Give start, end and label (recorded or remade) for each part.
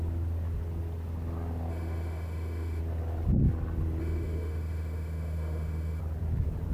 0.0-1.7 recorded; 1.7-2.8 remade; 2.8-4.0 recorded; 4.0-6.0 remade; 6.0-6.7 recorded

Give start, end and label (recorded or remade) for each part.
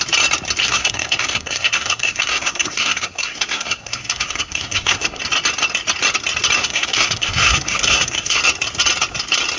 0.0-0.6 recorded; 0.6-5.2 remade; 5.2-6.6 recorded; 6.6-8.4 remade; 8.4-9.6 recorded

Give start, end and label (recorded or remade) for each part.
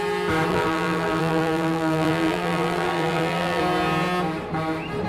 0.0-0.5 recorded; 0.5-3.6 remade; 3.6-5.1 recorded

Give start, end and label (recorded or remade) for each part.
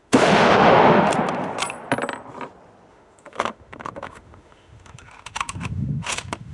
0.0-1.1 remade; 1.1-2.9 recorded; 2.9-6.5 remade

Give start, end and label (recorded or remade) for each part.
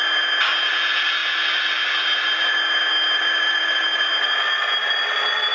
0.0-5.5 recorded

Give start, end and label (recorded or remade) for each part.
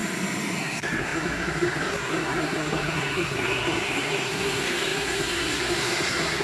0.0-0.6 recorded; 0.6-6.4 remade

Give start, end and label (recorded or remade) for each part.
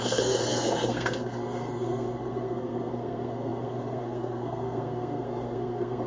0.0-6.1 remade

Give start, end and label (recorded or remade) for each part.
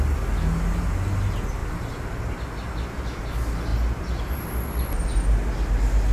0.0-1.6 recorded; 1.6-2.2 remade; 2.2-3.7 recorded; 3.7-4.4 remade; 4.4-6.1 recorded